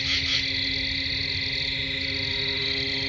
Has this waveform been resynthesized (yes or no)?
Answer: no